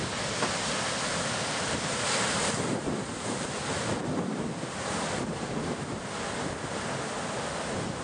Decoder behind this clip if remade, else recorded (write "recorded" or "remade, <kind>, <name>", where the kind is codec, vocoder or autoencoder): recorded